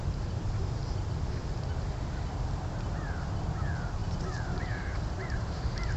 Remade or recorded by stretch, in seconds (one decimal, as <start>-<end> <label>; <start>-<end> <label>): 0.0-0.8 remade; 0.8-2.9 recorded; 2.9-6.0 remade